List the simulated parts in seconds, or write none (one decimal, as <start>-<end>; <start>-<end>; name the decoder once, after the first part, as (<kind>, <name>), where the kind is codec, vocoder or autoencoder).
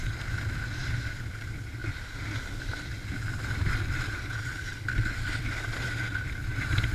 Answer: none